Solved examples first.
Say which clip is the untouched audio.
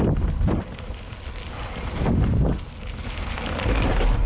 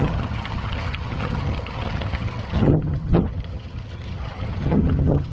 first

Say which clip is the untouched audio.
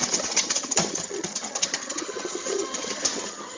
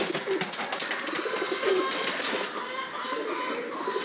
second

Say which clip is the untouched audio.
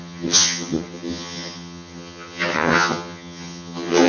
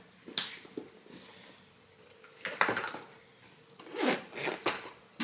second